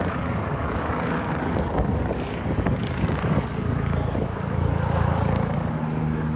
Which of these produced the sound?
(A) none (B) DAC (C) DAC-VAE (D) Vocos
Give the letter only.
B